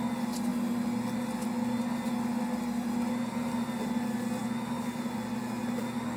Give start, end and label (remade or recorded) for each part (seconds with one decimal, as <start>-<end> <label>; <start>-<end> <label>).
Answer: 0.0-6.2 recorded